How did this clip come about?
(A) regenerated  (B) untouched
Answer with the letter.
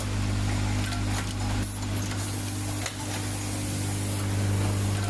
B